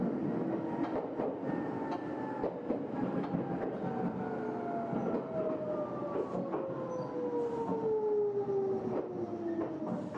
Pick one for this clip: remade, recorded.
recorded